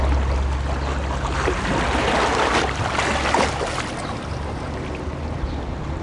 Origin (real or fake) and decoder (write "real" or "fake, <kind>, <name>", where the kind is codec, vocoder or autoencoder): real